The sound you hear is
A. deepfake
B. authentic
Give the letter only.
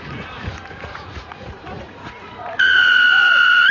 A